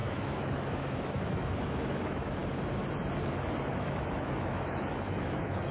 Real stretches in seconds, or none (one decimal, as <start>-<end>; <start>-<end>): 2.4-3.7